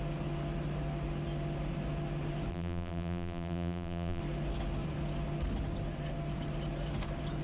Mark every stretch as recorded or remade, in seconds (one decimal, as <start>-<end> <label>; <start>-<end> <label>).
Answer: 0.0-2.5 recorded; 2.5-4.2 remade; 4.2-7.4 recorded